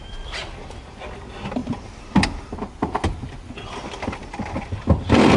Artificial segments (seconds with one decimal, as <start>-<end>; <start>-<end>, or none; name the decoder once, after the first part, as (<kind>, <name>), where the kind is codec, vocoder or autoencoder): none